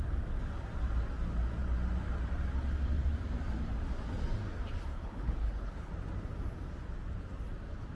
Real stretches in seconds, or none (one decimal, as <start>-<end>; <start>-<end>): 0.0-4.9; 5.9-8.0